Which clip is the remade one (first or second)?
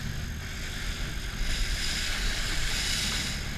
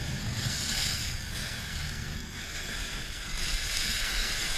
second